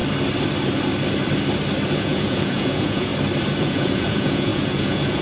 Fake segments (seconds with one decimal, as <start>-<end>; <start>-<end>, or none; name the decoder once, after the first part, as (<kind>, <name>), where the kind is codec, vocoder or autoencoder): 2.0-3.1 (vocoder, Vocos); 3.6-5.2